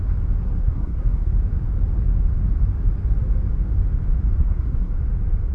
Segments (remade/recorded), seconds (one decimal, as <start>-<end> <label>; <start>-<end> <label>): 0.0-0.4 recorded; 0.4-1.3 remade; 1.3-4.4 recorded; 4.4-4.9 remade; 4.9-5.5 recorded